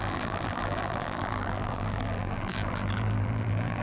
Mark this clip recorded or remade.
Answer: remade